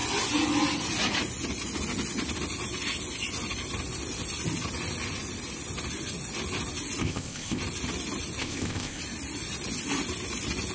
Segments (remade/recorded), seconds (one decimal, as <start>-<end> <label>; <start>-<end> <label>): 0.0-7.0 recorded; 7.0-7.6 remade; 7.6-8.4 recorded; 8.4-9.0 remade; 9.0-10.7 recorded